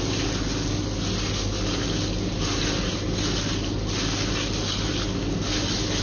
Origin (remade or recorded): recorded